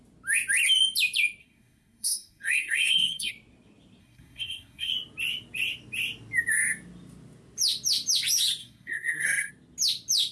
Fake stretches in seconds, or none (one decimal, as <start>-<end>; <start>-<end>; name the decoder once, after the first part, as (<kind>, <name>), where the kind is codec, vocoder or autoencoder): 1.4-3.3 (codec, SNAC); 4.0-4.9; 8.6-9.5